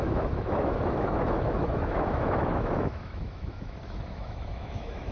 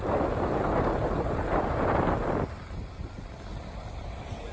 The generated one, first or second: first